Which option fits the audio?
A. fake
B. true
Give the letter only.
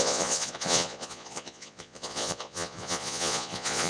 A